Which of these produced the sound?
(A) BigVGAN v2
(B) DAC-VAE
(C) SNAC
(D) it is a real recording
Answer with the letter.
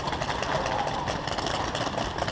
D